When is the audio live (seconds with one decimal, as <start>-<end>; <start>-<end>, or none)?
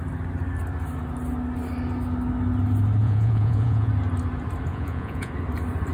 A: 0.0-3.0; 3.9-4.7; 5.3-5.9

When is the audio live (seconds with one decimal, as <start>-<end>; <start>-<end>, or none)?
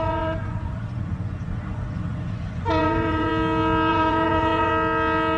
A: 3.3-3.9; 4.7-5.4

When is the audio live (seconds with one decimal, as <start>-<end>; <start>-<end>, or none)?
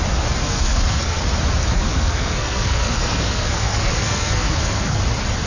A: 0.0-0.4; 1.2-1.7; 5.0-5.5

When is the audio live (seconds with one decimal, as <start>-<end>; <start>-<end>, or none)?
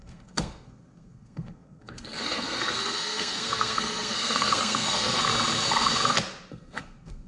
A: 5.2-6.5